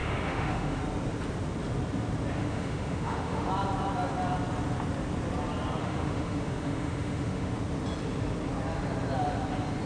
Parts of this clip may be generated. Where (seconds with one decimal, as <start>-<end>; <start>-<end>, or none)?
0.0-0.8; 2.4-3.5; 5.8-7.5